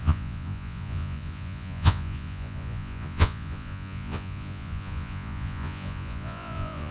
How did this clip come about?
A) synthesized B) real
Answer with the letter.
A